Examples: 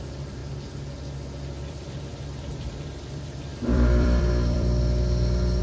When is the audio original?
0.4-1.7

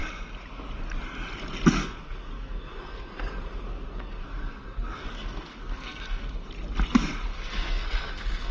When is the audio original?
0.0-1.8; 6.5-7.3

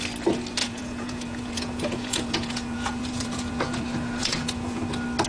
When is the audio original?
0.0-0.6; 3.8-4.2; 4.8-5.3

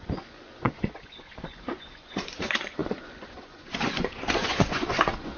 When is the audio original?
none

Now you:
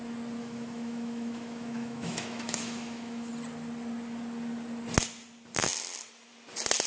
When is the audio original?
0.0-0.4; 3.3-6.9

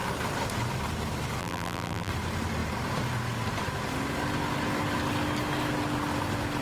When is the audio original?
0.0-1.4; 2.1-6.6

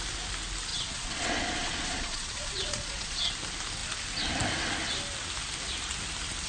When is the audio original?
0.0-0.7; 3.3-6.5

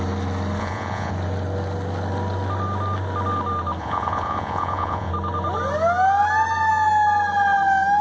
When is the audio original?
0.0-0.6; 1.1-3.8; 5.1-8.0